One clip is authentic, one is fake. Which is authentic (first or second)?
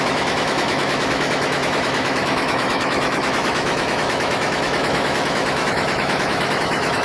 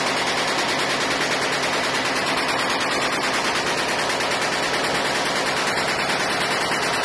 second